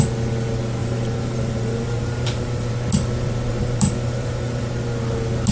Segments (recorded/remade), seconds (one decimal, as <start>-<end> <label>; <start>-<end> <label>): 0.0-0.8 recorded; 0.8-2.7 remade; 2.7-3.5 recorded; 3.5-4.7 remade; 4.7-5.5 recorded